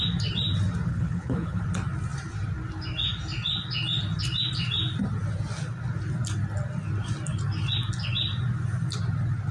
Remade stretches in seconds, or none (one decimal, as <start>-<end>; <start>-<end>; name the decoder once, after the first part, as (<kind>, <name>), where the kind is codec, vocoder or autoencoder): 0.9-1.6 (codec, HILCodec)